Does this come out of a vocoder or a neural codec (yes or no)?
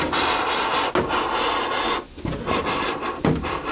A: no